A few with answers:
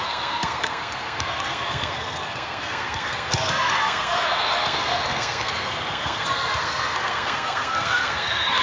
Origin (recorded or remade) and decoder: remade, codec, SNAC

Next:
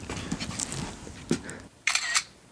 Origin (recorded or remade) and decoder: recorded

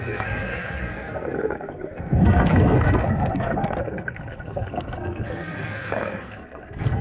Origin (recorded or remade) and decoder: remade, codec, SNAC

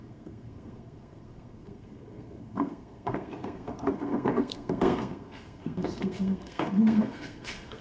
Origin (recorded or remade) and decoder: remade, codec, SNAC